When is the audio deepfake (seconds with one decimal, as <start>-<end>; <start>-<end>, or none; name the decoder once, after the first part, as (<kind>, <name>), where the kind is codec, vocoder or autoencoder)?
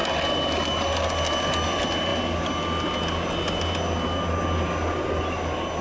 none